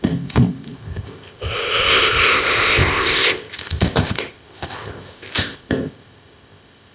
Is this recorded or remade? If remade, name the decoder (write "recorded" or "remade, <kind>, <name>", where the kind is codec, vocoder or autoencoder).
remade, codec, ZipCodec